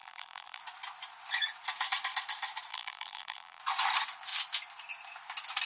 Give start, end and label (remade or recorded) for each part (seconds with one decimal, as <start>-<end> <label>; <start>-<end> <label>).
0.0-0.6 remade; 0.6-2.7 recorded; 2.7-3.6 remade; 3.6-5.7 recorded